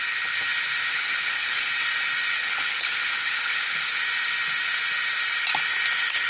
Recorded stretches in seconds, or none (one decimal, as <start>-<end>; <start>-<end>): 0.0-0.9; 1.7-2.4; 4.0-6.3